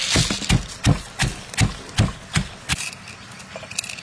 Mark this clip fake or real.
real